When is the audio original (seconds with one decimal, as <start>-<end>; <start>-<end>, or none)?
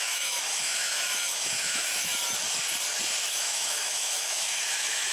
2.1-3.2